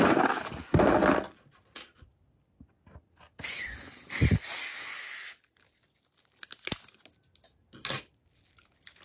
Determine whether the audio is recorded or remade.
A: recorded